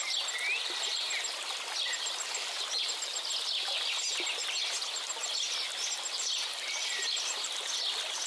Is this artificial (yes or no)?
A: no